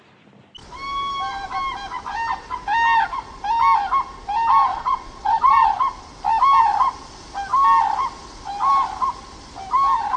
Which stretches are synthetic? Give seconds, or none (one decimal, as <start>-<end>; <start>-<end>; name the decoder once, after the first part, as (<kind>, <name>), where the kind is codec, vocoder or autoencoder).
4.7-5.7 (vocoder, Vocos)